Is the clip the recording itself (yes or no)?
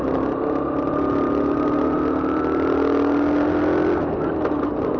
yes